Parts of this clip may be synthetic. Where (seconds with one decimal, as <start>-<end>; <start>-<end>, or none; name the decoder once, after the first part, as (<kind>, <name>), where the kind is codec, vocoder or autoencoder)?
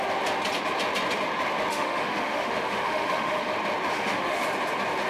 1.7-3.5 (autoencoder, DAC-VAE); 3.9-4.4